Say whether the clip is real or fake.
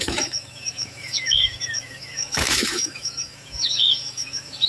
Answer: fake